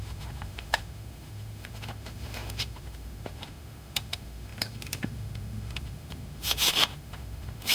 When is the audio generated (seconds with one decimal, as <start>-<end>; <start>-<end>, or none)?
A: 0.0-7.7